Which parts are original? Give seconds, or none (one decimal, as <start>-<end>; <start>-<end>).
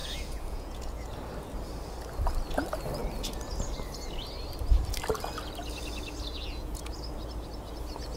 1.1-6.3; 6.9-8.2